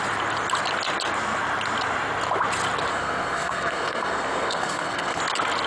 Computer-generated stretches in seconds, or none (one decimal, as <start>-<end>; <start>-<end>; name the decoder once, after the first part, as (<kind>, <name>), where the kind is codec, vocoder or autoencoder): 2.9-5.2 (codec, SNAC)